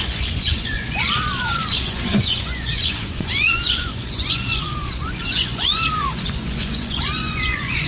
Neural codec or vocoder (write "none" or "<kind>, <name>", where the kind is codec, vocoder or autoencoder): vocoder, Vocos